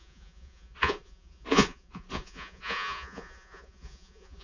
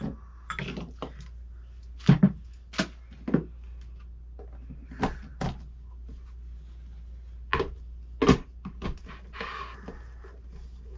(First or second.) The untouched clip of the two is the second